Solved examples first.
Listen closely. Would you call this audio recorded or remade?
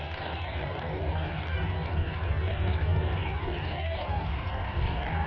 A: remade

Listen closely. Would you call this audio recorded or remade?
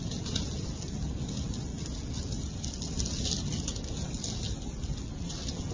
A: recorded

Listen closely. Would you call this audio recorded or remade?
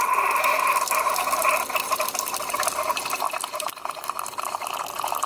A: recorded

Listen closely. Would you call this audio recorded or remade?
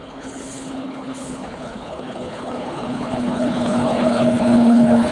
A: remade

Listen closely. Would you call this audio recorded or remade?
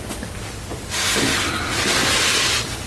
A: recorded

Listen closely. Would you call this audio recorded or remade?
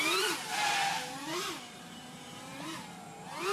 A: remade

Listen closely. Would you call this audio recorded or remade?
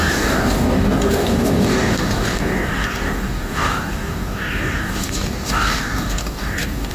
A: remade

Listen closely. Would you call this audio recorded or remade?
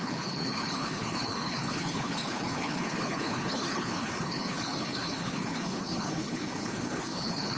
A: remade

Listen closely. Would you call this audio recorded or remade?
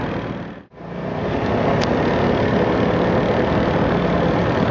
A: recorded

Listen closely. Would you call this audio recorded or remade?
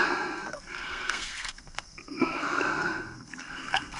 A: remade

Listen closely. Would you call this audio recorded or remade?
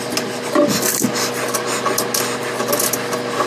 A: recorded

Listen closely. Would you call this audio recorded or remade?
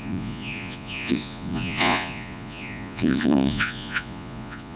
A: remade